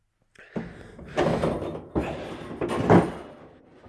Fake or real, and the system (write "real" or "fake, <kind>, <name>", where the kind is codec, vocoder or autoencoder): real